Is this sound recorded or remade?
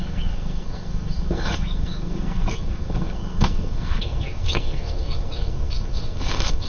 remade